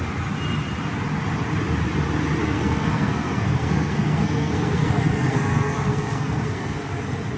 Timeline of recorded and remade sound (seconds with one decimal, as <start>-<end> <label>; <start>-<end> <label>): 0.0-2.4 recorded; 2.4-6.8 remade; 6.8-7.4 recorded